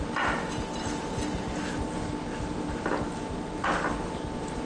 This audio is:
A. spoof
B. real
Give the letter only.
B